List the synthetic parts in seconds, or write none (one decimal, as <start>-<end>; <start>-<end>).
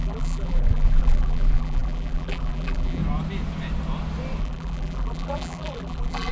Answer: 0.0-3.0; 4.4-6.3